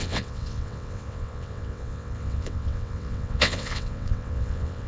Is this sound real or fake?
fake